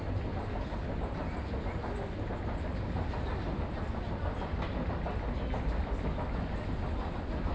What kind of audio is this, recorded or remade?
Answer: recorded